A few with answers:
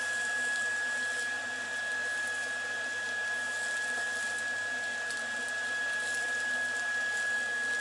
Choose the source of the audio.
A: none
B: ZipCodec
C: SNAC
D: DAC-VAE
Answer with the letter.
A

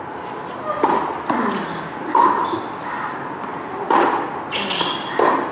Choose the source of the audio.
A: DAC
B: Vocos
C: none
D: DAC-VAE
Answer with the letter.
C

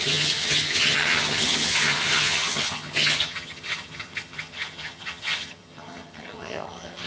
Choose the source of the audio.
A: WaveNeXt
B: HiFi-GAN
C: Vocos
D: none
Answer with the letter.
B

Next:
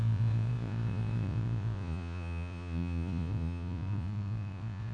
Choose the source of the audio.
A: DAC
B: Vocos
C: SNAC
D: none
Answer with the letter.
B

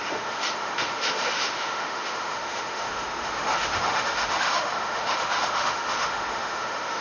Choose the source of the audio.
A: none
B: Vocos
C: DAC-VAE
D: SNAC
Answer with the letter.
C